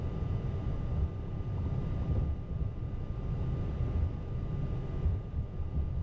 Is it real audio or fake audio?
real